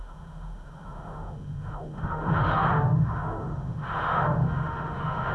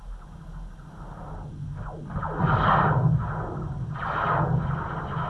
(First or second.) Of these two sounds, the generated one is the first